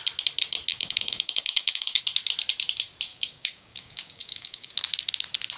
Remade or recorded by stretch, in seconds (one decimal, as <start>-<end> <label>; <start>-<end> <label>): 0.0-0.7 recorded; 0.7-2.0 remade; 2.0-3.1 recorded; 3.1-4.7 remade; 4.7-5.6 recorded